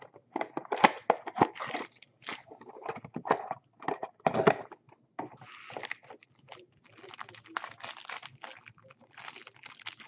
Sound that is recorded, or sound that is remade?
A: recorded